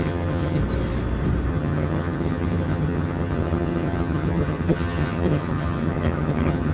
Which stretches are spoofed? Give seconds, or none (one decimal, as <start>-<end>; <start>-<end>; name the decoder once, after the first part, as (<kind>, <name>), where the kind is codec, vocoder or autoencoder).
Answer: 0.0-0.6 (vocoder, HiFi-GAN); 1.5-6.7